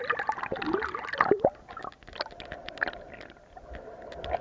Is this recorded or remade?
recorded